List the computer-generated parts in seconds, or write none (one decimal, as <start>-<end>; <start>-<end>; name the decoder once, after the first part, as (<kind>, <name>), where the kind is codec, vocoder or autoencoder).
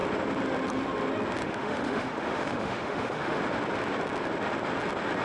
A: 1.4-3.4 (autoencoder, DAC-VAE)